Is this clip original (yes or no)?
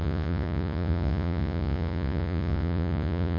no